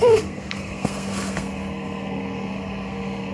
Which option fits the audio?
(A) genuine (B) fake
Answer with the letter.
B